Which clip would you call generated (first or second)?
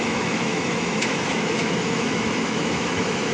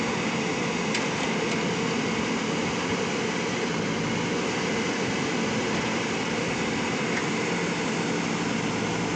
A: first